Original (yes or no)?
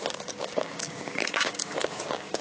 no